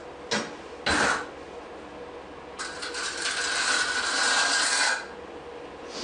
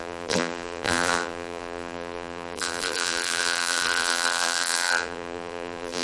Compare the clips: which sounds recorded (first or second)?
first